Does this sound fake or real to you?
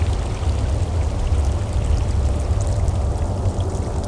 real